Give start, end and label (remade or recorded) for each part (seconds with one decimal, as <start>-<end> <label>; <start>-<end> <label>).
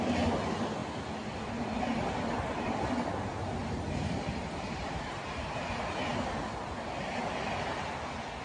0.0-3.6 recorded; 3.6-5.9 remade; 5.9-8.4 recorded